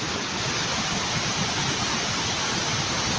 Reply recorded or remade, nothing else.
recorded